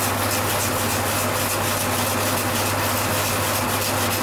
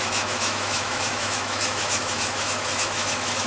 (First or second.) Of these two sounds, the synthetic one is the second